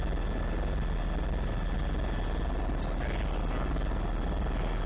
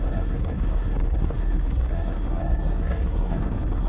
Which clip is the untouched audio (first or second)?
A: first